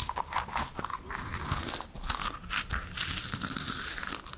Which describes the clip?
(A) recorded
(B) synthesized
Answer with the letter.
A